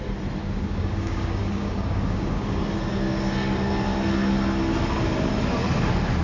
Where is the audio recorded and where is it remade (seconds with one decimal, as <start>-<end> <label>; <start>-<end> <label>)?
0.0-0.4 recorded; 0.4-2.6 remade; 2.6-6.2 recorded